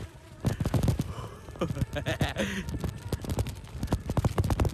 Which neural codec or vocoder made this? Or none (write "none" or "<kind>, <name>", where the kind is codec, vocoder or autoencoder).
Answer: vocoder, BigVGAN v2